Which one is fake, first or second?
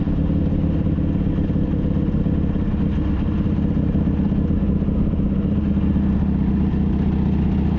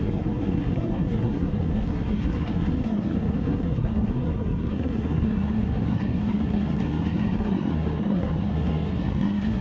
second